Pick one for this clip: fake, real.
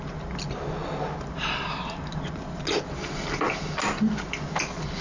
real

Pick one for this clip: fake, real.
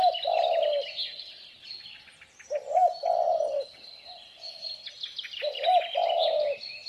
real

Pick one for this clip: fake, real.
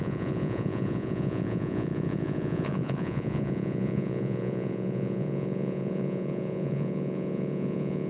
fake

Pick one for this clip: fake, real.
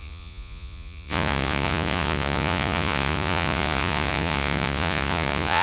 fake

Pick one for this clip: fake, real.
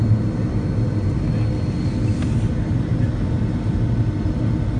real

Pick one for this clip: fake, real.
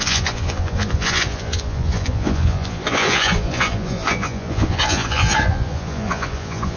fake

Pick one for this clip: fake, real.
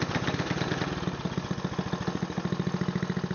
real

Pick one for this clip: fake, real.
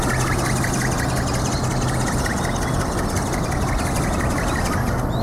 real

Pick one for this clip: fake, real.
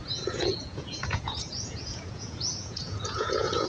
fake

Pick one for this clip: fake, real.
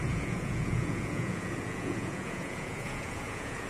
fake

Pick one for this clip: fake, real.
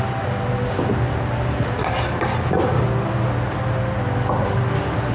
real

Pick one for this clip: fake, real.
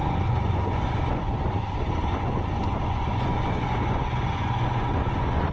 fake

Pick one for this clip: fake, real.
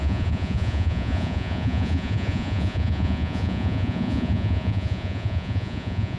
fake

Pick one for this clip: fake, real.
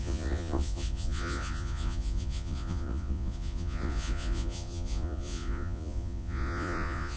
fake